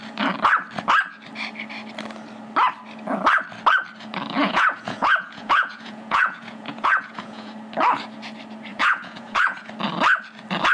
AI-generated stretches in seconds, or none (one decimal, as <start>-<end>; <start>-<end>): 4.4-7.5; 8.7-9.7